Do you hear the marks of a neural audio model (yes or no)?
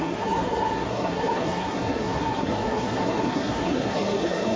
yes